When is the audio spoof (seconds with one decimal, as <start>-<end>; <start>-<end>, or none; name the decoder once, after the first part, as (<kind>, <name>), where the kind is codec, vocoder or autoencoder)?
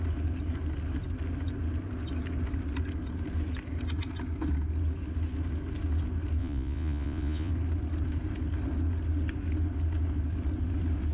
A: 6.4-7.5 (vocoder, Vocos)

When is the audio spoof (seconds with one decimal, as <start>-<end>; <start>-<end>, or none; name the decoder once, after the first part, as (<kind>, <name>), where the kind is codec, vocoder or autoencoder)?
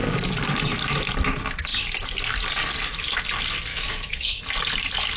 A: 3.7-4.4 (autoencoder, DAC-VAE)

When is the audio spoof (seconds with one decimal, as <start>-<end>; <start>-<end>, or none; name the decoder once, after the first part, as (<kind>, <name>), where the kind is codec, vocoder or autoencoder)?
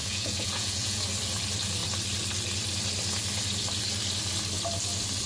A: 0.0-1.0 (vocoder, Vocos)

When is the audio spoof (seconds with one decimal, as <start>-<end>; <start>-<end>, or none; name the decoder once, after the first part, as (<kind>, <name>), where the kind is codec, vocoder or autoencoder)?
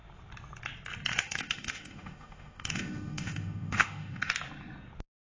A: 1.1-4.3 (autoencoder, DAC-VAE)